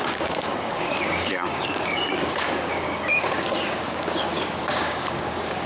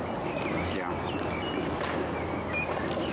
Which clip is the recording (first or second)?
second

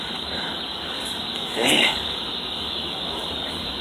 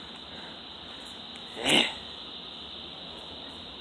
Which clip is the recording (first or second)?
second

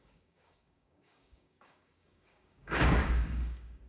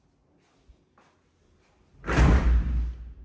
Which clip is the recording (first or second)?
second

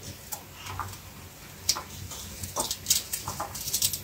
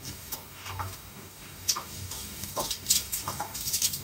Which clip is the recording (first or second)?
first